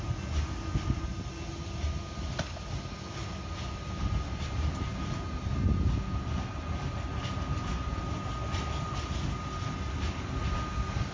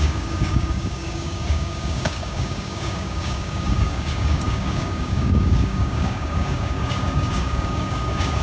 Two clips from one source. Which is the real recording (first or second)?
first